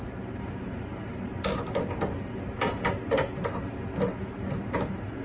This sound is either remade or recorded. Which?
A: recorded